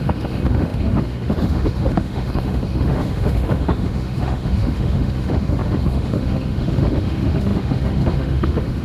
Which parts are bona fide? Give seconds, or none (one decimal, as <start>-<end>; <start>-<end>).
none